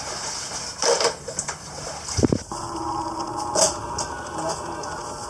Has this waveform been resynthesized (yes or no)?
no